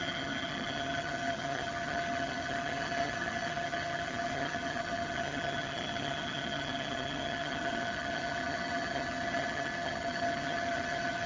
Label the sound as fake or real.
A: fake